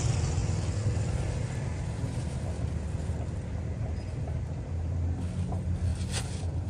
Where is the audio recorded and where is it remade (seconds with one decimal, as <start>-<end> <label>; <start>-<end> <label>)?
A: 0.0-6.7 recorded